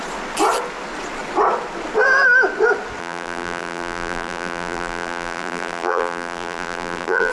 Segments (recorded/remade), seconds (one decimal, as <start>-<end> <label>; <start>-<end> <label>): 0.0-3.0 recorded; 3.0-7.3 remade